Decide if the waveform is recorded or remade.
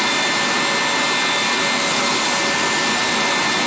recorded